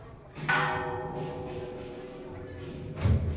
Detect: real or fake fake